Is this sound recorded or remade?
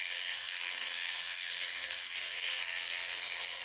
remade